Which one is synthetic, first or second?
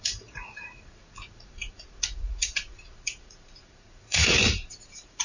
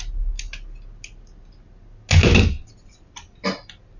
first